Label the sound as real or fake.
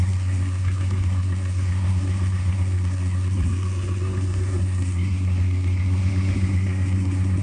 fake